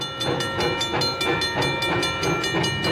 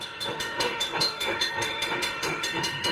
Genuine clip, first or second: first